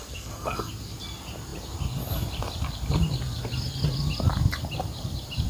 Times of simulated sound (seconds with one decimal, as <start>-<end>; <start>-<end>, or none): 0.0-0.7